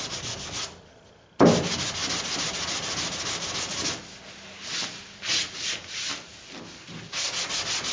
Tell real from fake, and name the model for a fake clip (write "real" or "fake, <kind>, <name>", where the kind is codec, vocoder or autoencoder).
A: real